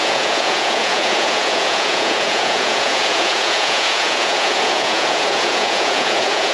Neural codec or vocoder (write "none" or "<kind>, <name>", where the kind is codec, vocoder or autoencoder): vocoder, Vocos